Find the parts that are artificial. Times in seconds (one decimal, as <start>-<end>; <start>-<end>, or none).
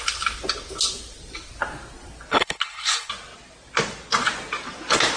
2.3-3.1